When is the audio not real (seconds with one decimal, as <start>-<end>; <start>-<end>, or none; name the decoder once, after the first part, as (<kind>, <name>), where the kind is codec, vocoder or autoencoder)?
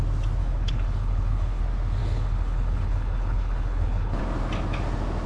0.4-1.6 (codec, HILCodec); 2.0-4.2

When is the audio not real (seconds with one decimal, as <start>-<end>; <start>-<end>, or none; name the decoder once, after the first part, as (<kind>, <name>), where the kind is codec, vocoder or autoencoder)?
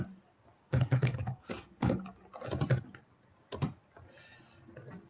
0.6-1.5 (codec, HILCodec)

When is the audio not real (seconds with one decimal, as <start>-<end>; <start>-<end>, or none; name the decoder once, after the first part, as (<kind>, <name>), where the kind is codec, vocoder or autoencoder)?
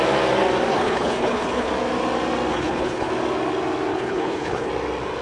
0.7-1.7 (codec, HILCodec); 2.5-3.1; 3.9-4.7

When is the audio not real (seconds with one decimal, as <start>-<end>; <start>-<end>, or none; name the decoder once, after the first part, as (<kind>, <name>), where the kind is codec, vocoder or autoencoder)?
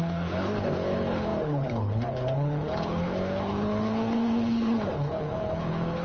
0.0-6.0 (codec, HILCodec)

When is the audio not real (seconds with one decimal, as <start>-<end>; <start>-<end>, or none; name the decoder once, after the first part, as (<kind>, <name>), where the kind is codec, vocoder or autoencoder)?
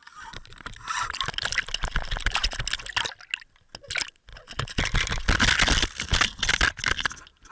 none